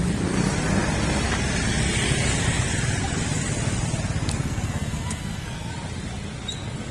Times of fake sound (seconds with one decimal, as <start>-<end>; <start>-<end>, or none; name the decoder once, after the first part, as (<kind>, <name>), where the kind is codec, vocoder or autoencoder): 4.2-5.7 (codec, SNAC)